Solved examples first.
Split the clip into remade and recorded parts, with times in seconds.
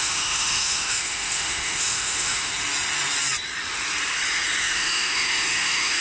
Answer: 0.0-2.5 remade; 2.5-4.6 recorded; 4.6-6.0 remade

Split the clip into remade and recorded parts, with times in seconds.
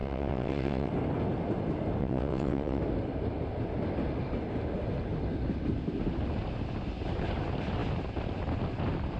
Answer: 0.0-0.9 remade; 0.9-2.0 recorded; 2.0-2.8 remade; 2.8-9.2 recorded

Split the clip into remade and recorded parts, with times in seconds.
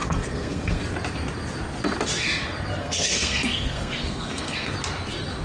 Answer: 0.0-0.8 remade; 0.8-2.8 recorded; 2.8-4.7 remade; 4.7-5.4 recorded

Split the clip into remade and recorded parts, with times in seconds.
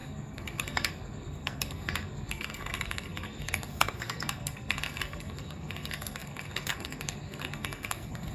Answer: 0.0-8.3 remade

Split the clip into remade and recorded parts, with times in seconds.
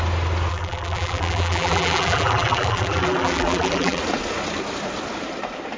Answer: 0.0-0.5 recorded; 0.5-4.0 remade; 4.0-5.8 recorded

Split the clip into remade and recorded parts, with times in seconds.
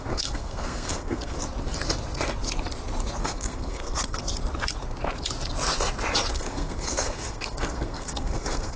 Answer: 0.0-1.4 remade; 1.4-3.2 recorded; 3.2-4.2 remade; 4.2-6.3 recorded; 6.3-8.8 remade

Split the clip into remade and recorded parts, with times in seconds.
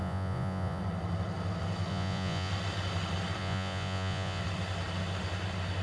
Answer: 0.0-0.8 remade; 0.8-1.9 recorded; 1.9-2.5 remade; 2.5-3.4 recorded; 3.4-4.4 remade; 4.4-5.8 recorded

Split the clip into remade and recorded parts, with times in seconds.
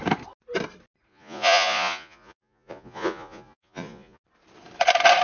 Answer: 0.0-1.1 recorded; 1.1-4.2 remade; 4.2-5.2 recorded